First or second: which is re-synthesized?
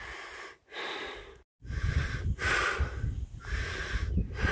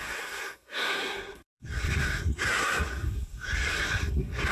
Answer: second